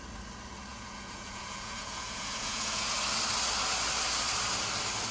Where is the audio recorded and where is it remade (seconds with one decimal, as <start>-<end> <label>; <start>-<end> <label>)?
0.0-0.7 recorded; 0.7-2.9 remade; 2.9-5.1 recorded